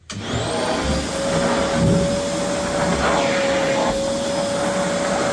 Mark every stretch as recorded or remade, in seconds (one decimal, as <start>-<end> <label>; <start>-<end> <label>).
0.0-5.3 recorded